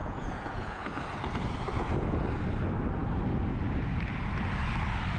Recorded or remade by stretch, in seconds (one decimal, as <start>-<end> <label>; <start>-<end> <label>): 0.0-1.0 remade; 1.0-5.2 recorded